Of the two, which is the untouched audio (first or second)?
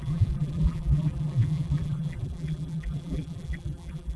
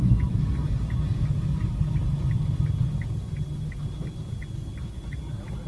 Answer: second